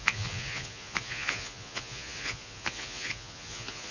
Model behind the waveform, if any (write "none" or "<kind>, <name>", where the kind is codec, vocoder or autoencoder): vocoder, Vocos